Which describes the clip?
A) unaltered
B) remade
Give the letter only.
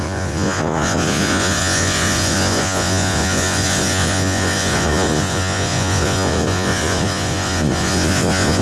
B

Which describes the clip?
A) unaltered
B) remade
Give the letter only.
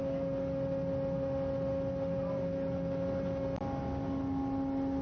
A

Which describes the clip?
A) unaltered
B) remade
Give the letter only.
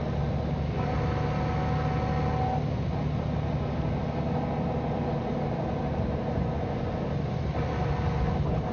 A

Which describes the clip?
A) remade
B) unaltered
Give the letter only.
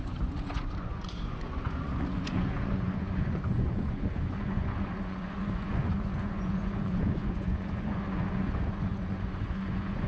A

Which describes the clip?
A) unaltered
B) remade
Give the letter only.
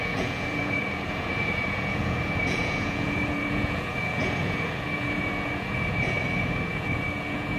B